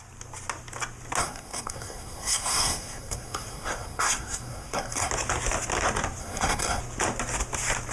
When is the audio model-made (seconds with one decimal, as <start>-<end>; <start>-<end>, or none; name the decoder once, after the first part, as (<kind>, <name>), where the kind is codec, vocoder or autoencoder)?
1.2-5.1 (codec, SNAC); 6.2-6.8